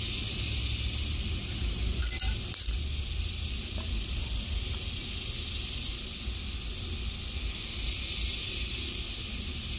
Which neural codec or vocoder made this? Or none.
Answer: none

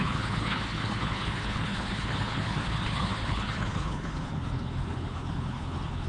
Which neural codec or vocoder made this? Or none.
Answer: codec, HILCodec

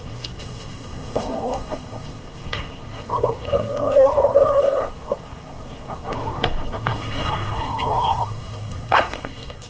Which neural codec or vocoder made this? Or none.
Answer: codec, SNAC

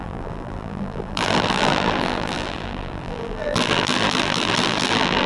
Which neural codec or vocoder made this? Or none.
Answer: vocoder, BigVGAN v2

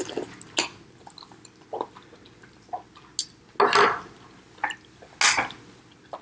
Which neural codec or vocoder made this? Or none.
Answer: none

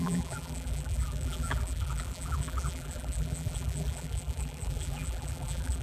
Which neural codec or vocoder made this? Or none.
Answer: vocoder, BigVGAN v2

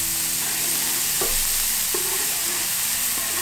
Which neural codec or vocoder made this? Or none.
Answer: none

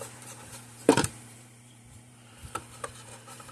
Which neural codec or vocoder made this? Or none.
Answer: vocoder, BigVGAN v2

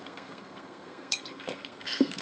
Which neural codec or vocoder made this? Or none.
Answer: codec, SNAC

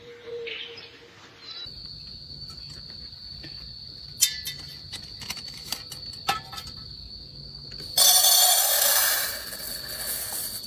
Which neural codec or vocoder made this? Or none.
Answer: none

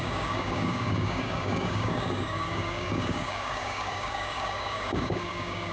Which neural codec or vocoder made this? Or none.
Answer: codec, DAC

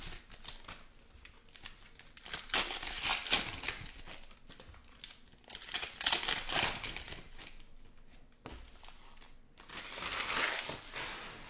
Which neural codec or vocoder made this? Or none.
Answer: none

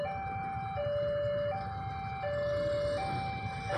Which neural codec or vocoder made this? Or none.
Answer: none